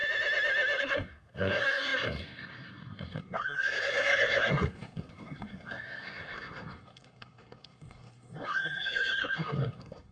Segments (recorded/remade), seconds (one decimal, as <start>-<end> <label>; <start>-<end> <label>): 0.0-0.8 recorded; 0.8-10.1 remade

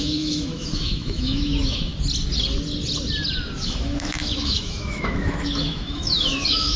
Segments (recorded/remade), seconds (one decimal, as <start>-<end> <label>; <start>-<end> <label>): 0.0-1.9 remade; 1.9-3.6 recorded; 3.6-6.8 remade